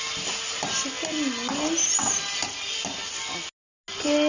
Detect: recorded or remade recorded